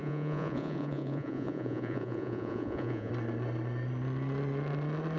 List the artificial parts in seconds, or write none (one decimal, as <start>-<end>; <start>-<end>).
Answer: 0.0-3.1